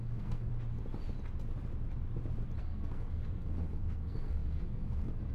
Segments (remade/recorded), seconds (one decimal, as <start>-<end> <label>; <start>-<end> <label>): 0.0-0.5 remade; 0.5-2.6 recorded; 2.6-5.3 remade